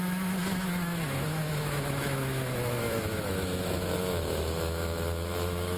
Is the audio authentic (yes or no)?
no